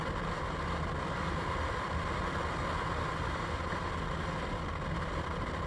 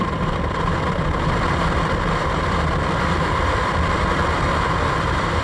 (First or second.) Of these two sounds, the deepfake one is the second